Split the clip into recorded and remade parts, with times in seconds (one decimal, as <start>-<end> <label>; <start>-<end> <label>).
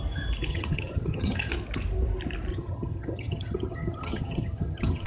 0.0-0.5 recorded; 0.5-1.5 remade; 1.5-2.5 recorded; 2.5-5.1 remade